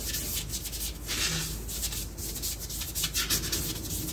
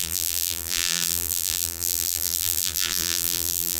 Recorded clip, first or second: first